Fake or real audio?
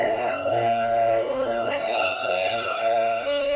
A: fake